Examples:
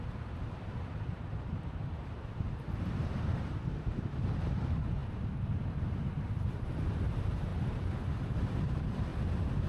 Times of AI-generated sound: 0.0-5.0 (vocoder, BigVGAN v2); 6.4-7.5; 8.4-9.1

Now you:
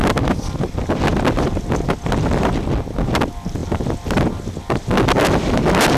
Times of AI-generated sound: none